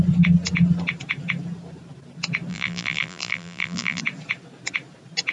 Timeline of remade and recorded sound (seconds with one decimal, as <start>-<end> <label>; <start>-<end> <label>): 0.0-2.5 recorded; 2.5-4.0 remade; 4.0-5.3 recorded